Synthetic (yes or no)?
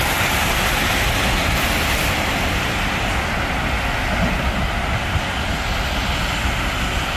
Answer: no